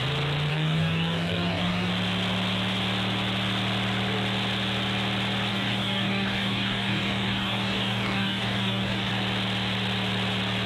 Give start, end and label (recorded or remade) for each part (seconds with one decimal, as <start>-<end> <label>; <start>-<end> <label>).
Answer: 0.0-0.5 recorded; 0.5-1.9 remade; 1.9-5.5 recorded; 5.5-9.1 remade; 9.1-10.7 recorded